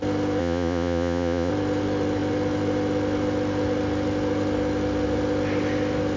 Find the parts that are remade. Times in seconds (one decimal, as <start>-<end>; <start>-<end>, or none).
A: 0.4-1.5